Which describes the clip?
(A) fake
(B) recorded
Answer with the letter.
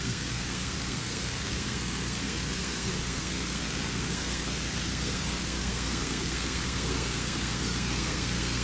A